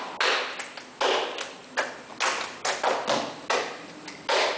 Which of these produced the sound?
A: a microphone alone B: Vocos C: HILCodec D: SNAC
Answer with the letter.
A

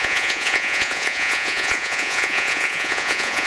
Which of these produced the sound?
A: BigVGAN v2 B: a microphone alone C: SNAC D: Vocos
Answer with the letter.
D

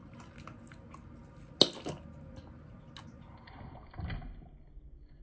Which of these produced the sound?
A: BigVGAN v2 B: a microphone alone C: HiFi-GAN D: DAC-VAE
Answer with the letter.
B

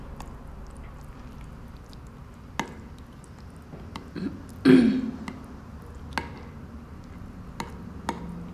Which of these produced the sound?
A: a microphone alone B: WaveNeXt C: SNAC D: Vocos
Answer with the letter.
A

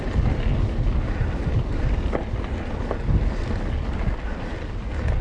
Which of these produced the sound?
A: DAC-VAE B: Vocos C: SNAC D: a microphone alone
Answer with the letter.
D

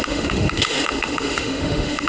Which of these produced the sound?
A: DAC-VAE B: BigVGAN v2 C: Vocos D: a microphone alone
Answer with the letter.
A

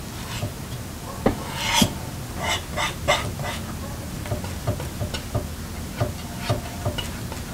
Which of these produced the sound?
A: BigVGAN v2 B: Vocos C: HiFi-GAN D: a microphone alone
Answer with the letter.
D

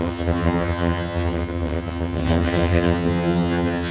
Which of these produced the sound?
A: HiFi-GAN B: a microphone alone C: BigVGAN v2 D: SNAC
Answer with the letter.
A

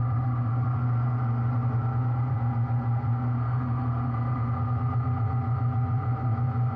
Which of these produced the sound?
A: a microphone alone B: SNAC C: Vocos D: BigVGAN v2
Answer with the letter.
C